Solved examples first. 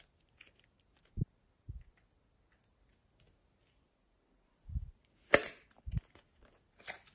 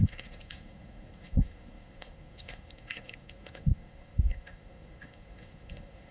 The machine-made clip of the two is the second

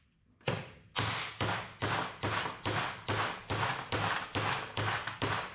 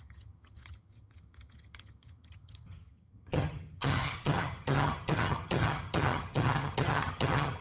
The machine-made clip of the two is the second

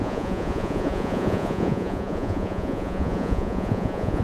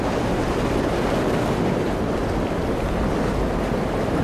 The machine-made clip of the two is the first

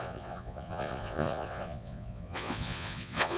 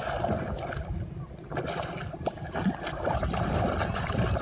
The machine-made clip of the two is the first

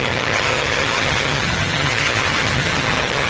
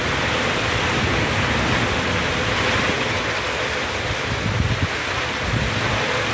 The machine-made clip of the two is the first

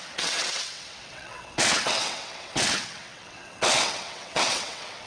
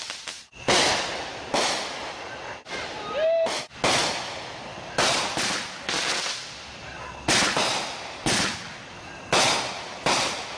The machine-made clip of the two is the first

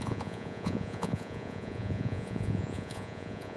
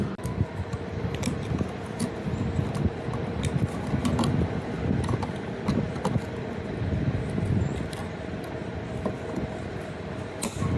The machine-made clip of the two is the first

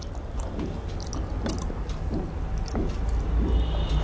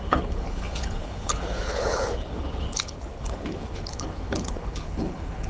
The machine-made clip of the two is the second